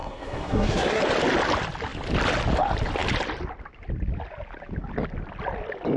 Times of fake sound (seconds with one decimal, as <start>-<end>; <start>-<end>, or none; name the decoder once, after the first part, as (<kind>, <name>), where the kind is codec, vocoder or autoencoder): 0.0-1.0 (codec, SNAC)